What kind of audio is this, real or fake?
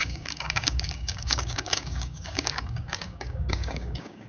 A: fake